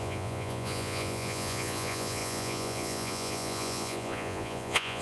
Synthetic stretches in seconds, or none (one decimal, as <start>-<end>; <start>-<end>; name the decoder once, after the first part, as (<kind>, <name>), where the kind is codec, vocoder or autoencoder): 0.0-5.0 (vocoder, Vocos)